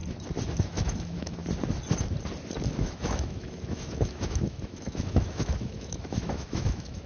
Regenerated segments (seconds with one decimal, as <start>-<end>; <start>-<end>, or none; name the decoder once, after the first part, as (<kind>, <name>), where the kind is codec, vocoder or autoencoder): 0.6-1.4 (autoencoder, DAC-VAE); 2.8-7.1